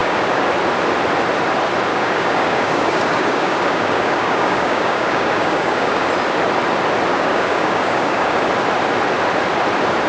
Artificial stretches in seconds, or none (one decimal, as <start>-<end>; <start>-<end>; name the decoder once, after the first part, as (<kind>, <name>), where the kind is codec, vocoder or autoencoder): 0.0-0.5 (codec, DAC); 1.9-6.1; 7.1-8.5